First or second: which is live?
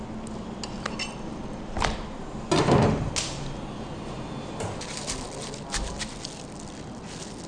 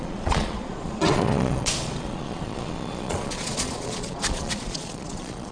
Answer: first